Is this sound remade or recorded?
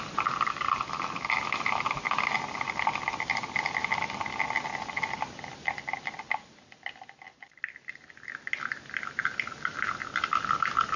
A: recorded